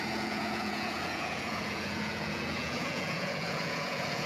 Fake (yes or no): yes